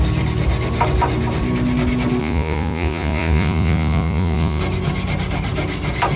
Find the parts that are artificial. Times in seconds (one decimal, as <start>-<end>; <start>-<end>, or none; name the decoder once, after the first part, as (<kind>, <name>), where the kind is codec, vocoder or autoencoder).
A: 2.2-4.6 (vocoder, Vocos)